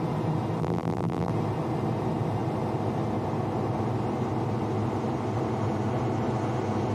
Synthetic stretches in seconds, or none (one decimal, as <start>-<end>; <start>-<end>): 0.6-1.3